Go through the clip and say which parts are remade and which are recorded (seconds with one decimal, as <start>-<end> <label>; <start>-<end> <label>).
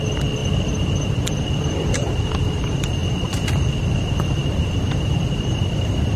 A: 0.0-6.2 remade